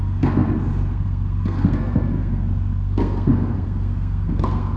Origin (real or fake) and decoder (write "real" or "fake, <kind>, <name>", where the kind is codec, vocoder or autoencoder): fake, codec, SNAC